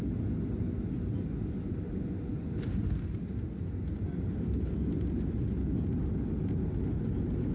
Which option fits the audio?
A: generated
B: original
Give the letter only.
B